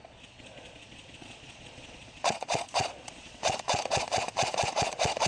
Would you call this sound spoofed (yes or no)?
yes